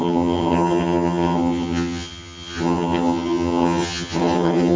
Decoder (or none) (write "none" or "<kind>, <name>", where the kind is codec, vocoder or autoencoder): vocoder, HiFi-GAN